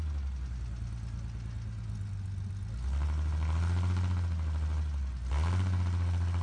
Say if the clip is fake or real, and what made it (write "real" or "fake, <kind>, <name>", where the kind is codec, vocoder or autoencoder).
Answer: real